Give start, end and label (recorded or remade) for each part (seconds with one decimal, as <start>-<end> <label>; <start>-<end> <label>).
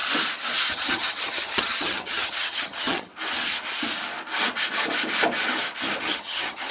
0.0-0.7 recorded; 0.7-3.1 remade; 3.1-6.0 recorded; 6.0-6.7 remade